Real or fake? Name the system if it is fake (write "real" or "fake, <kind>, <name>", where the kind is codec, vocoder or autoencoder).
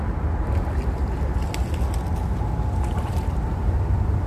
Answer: real